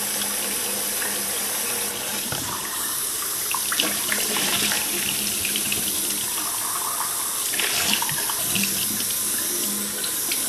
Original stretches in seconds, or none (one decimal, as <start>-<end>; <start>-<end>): 0.0-2.1; 5.9-10.5